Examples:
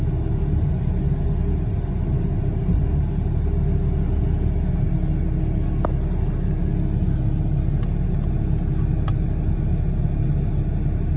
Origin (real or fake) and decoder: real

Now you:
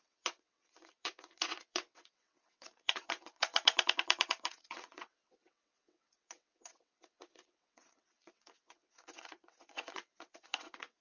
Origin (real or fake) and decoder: fake, vocoder, WaveNeXt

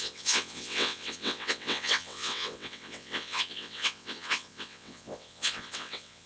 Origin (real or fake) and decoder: fake, vocoder, WaveNeXt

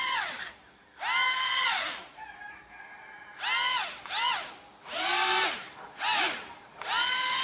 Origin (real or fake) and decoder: real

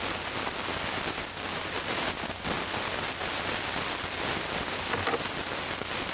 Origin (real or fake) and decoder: real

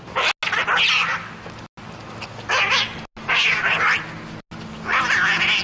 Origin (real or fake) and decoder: real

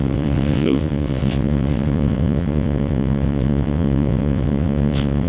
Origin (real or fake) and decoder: fake, vocoder, WaveNeXt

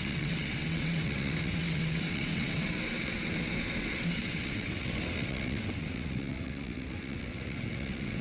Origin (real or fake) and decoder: fake, vocoder, WaveNeXt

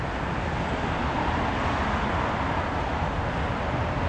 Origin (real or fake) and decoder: real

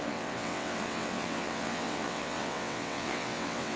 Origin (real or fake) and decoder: fake, vocoder, WaveNeXt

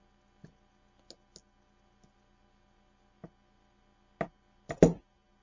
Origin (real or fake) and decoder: real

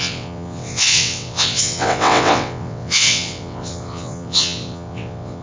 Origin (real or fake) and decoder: fake, vocoder, WaveNeXt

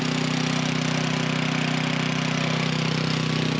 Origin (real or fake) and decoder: real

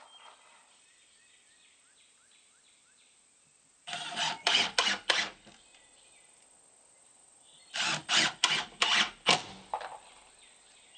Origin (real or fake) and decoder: real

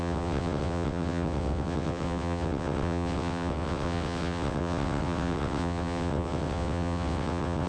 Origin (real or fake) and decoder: fake, vocoder, WaveNeXt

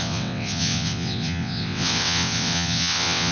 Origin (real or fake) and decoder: fake, vocoder, WaveNeXt